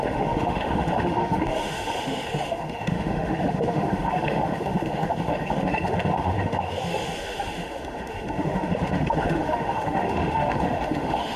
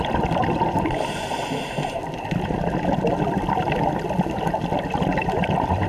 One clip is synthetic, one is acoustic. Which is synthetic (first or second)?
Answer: first